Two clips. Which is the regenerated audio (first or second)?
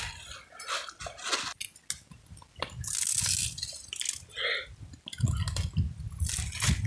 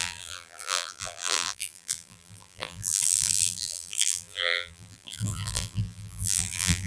second